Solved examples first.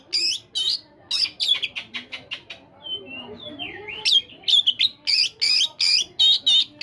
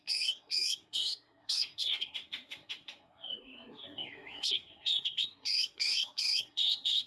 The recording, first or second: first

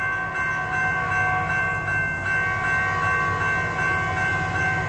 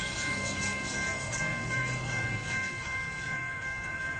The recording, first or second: first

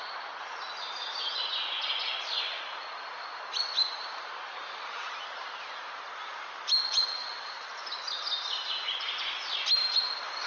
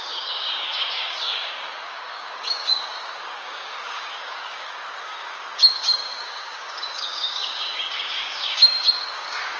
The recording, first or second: first